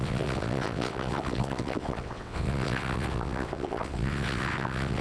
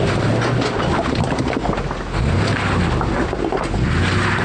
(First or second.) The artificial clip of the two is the first